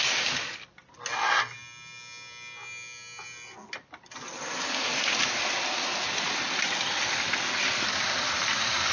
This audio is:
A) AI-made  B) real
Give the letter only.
B